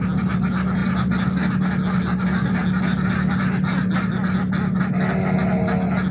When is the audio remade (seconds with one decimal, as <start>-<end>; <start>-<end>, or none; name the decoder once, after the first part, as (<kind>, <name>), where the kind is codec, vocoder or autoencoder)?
none